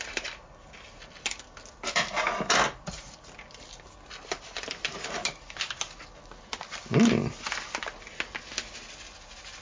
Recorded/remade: recorded